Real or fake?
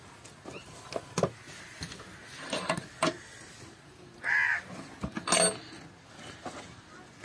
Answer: real